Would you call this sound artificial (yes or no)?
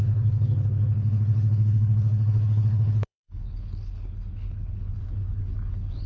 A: yes